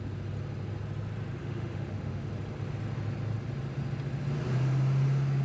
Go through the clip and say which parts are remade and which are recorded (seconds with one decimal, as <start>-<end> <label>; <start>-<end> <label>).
0.0-1.4 recorded; 1.4-2.3 remade; 2.3-5.4 recorded